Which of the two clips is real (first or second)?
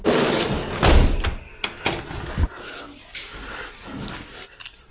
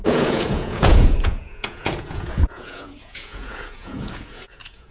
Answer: first